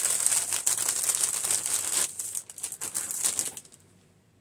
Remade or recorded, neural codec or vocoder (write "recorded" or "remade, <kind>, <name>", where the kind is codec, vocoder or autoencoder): recorded